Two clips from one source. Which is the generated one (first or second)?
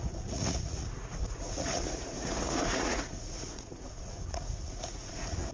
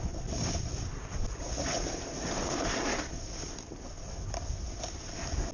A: first